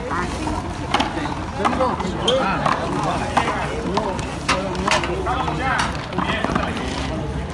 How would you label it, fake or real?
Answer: real